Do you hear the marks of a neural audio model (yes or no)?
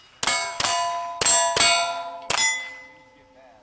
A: no